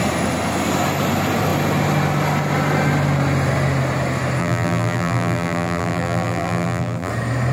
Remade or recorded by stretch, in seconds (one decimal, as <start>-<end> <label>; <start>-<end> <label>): 0.0-4.4 recorded; 4.4-7.1 remade; 7.1-7.5 recorded